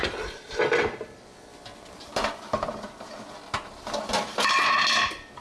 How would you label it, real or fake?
real